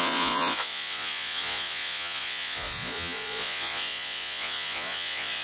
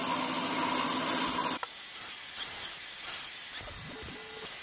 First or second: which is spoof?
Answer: first